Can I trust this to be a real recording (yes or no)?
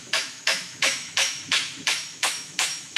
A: no